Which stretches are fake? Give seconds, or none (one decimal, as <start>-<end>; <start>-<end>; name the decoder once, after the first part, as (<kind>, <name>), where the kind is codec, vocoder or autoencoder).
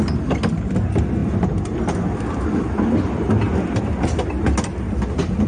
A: none